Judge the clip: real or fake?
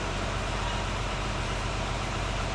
fake